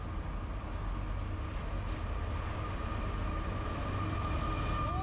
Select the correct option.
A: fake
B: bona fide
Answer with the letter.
B